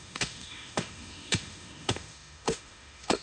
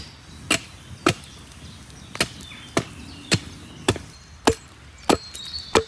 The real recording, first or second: second